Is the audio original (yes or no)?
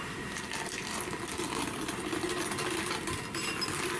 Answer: yes